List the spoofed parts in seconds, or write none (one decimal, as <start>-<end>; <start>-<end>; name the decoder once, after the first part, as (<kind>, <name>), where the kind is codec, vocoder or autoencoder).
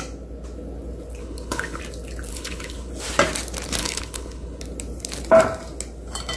1.2-1.8 (codec, HILCodec); 2.3-2.9; 3.8-4.6